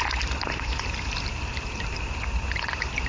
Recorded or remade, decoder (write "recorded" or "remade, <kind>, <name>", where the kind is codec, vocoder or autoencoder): recorded